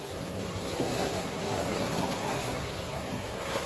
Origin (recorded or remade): remade